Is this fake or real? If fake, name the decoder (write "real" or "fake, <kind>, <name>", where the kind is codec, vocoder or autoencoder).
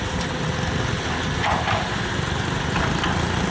real